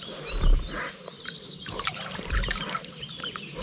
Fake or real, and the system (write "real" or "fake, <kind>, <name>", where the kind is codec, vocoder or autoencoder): fake, vocoder, BigVGAN v2